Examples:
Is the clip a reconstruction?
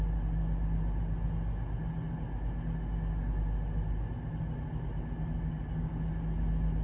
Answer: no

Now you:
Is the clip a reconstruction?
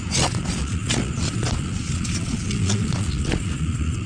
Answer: yes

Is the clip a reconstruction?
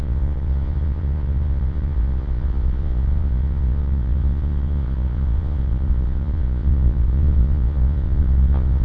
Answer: yes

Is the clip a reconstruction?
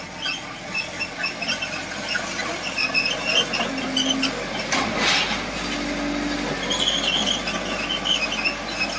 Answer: no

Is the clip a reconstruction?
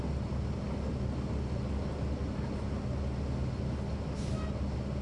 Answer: no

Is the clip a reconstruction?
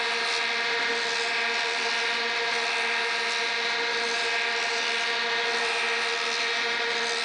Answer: no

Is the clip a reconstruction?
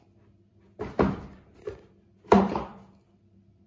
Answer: no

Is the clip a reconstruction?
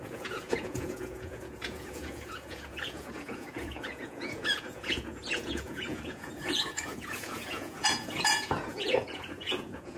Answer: yes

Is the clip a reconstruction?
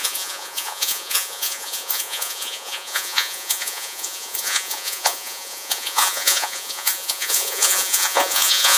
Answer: yes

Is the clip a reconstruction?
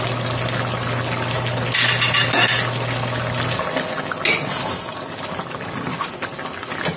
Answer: no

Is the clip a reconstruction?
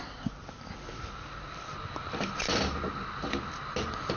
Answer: no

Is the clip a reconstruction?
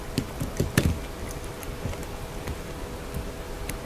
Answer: no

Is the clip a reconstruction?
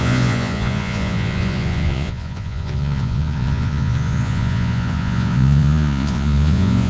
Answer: yes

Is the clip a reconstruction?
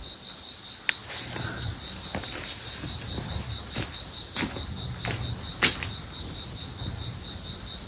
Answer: no